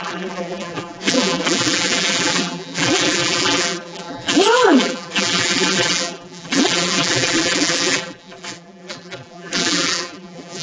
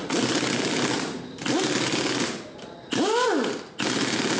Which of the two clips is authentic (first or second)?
second